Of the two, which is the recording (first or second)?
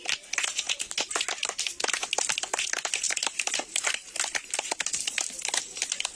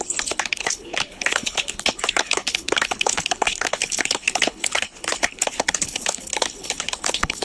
first